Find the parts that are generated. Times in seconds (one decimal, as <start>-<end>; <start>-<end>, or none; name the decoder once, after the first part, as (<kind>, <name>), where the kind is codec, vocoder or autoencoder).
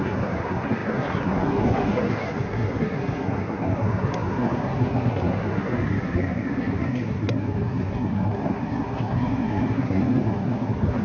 0.0-11.0 (codec, SNAC)